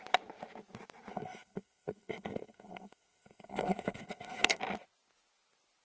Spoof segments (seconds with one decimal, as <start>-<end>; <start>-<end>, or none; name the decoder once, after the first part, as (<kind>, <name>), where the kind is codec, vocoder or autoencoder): 1.1-4.6 (codec, SNAC)